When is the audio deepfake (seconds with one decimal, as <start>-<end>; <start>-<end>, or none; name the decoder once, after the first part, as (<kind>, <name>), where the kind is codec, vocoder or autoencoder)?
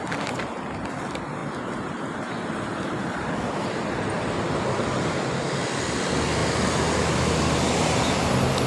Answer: none